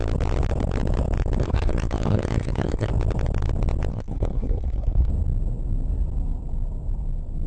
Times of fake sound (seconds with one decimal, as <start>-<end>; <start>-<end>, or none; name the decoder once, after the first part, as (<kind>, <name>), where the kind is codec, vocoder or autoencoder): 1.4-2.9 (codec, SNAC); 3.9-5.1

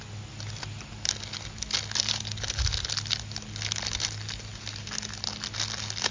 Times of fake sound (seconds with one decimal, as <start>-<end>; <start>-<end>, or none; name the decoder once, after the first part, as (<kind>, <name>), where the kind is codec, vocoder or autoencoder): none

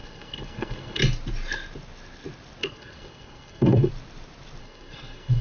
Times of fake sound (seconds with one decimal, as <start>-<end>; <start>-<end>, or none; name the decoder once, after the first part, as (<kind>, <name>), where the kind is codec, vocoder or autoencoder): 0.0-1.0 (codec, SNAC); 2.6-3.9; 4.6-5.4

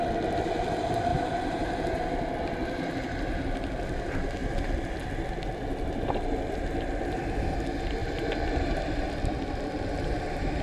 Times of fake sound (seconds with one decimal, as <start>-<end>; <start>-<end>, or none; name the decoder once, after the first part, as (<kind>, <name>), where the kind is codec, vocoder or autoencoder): 8.0-10.6 (vocoder, BigVGAN v2)

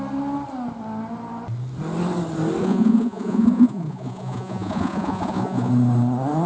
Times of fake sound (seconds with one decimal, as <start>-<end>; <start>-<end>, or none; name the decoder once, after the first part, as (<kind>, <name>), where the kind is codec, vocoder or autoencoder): 2.6-5.7 (vocoder, Vocos)